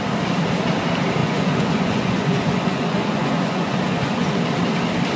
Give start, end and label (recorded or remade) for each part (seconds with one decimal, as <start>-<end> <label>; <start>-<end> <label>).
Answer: 0.0-1.2 recorded; 1.2-4.3 remade; 4.3-5.2 recorded